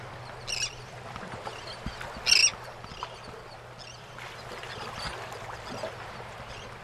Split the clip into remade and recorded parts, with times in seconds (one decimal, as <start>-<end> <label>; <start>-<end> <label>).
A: 0.0-6.8 recorded